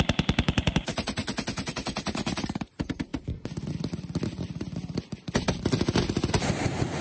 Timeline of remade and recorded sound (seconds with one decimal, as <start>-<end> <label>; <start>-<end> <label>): 0.0-1.2 remade; 1.2-1.7 recorded; 1.7-3.1 remade; 3.1-6.3 recorded; 6.3-7.0 remade

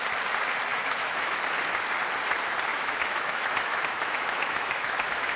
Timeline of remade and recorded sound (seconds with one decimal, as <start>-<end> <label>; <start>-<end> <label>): 0.0-0.7 recorded; 0.7-1.4 remade; 1.4-2.7 recorded; 2.7-5.4 remade

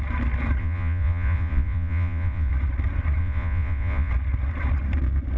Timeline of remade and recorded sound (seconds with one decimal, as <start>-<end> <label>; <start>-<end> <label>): 0.0-0.6 recorded; 0.6-2.5 remade; 2.5-3.2 recorded; 3.2-4.1 remade; 4.1-5.4 recorded

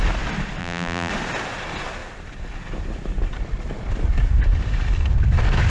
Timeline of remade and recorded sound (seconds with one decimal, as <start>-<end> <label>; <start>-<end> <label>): 0.0-0.6 recorded; 0.6-1.1 remade; 1.1-5.7 recorded

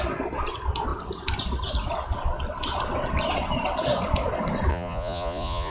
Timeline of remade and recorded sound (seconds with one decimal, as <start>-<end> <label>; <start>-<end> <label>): 0.0-4.7 recorded; 4.7-5.7 remade

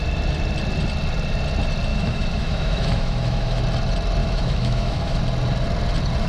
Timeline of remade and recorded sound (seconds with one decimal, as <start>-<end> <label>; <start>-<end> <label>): 0.0-1.9 recorded; 1.9-3.6 remade; 3.6-4.2 recorded; 4.2-5.2 remade; 5.2-6.3 recorded